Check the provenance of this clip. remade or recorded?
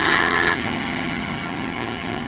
remade